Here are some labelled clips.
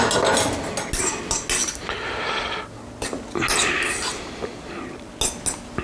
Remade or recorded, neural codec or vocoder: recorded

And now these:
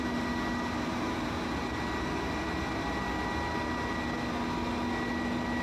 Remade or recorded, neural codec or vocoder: recorded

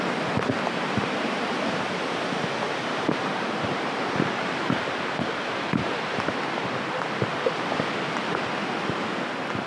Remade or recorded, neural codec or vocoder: recorded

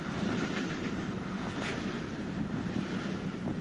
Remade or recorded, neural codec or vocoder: remade, vocoder, BigVGAN v2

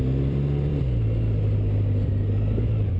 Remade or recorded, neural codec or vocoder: remade, vocoder, BigVGAN v2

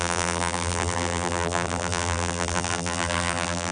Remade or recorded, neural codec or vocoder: remade, vocoder, BigVGAN v2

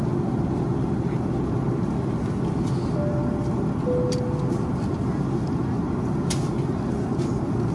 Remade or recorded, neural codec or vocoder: recorded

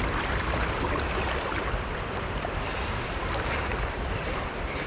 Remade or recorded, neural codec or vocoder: remade, vocoder, BigVGAN v2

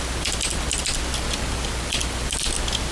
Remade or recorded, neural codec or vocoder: recorded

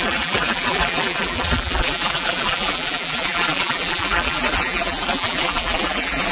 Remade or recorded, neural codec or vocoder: remade, vocoder, BigVGAN v2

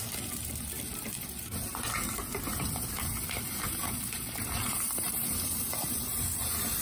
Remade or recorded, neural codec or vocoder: remade, vocoder, BigVGAN v2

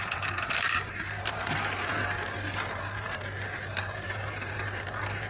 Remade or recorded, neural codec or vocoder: remade, vocoder, BigVGAN v2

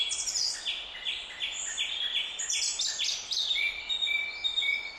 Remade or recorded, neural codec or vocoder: recorded